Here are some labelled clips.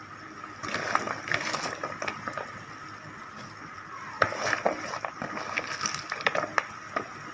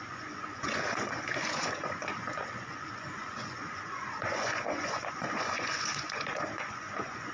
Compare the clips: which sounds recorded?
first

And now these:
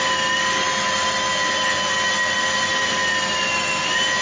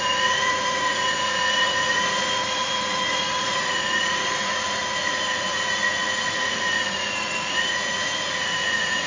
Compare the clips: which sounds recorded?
first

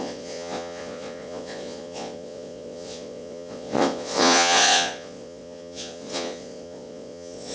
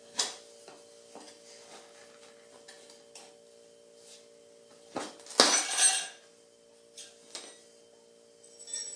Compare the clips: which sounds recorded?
second